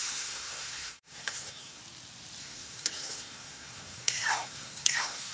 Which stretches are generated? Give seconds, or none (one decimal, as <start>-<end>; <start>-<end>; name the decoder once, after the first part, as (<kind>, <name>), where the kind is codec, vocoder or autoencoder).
0.0-1.8 (codec, SNAC); 2.4-5.3